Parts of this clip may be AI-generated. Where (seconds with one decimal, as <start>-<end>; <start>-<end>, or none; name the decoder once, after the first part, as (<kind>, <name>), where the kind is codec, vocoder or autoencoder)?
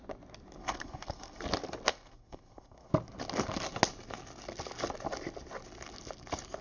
0.6-1.4 (codec, SNAC); 1.9-2.9